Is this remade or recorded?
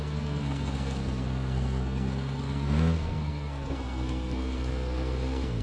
remade